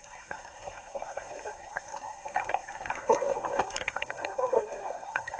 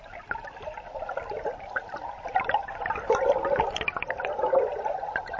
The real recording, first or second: second